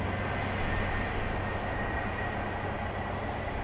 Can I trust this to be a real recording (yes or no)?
yes